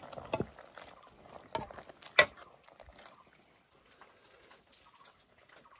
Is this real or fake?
real